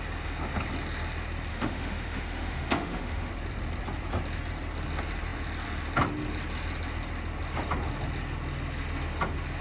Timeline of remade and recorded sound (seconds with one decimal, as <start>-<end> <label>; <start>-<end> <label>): 0.0-1.5 recorded; 1.5-3.3 remade; 3.3-9.6 recorded